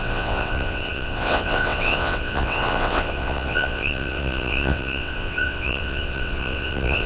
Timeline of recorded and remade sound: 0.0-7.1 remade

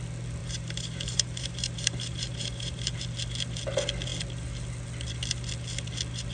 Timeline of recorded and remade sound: 0.0-0.4 recorded; 0.4-3.0 remade; 3.0-6.3 recorded

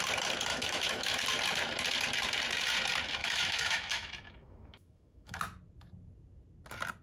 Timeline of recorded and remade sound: 0.0-0.5 recorded; 0.5-1.2 remade; 1.2-3.2 recorded; 3.2-5.4 remade; 5.4-7.0 recorded